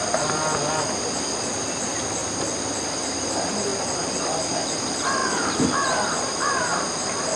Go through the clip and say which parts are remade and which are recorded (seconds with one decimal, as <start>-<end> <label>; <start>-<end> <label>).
0.0-7.4 recorded